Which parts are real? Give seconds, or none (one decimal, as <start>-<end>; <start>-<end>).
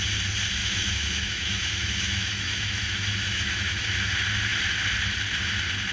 0.0-0.6; 4.1-5.9